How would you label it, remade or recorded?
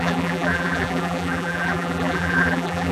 remade